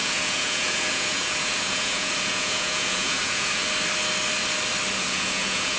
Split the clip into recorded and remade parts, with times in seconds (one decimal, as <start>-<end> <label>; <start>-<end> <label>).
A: 0.0-3.6 remade; 3.6-5.0 recorded; 5.0-5.8 remade

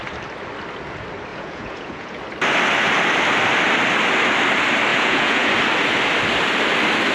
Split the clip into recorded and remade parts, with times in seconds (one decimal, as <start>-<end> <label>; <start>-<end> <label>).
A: 0.0-1.3 recorded; 1.3-2.2 remade; 2.2-4.9 recorded; 4.9-5.5 remade; 5.5-7.1 recorded

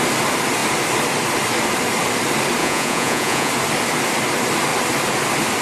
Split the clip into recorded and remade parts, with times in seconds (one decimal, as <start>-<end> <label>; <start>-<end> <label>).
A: 0.0-2.6 recorded; 2.6-3.5 remade; 3.5-5.6 recorded

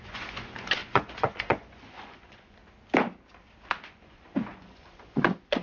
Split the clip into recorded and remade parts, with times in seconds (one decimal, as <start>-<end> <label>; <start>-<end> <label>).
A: 0.0-2.6 remade; 2.6-3.8 recorded; 3.8-5.6 remade

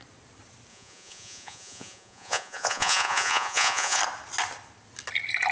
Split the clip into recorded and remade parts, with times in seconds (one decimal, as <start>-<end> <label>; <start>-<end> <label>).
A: 0.0-0.7 recorded; 0.7-4.0 remade; 4.0-5.5 recorded

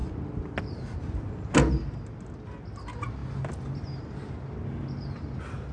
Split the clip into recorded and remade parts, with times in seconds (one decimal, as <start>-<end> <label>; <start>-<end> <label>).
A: 0.0-5.7 recorded